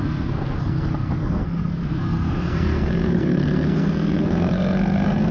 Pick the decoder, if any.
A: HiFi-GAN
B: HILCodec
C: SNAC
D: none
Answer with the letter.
C